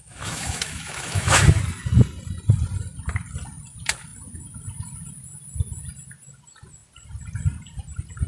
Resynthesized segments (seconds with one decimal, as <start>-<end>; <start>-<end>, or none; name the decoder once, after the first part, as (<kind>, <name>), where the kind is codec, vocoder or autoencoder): 0.0-1.6 (autoencoder, DAC-VAE)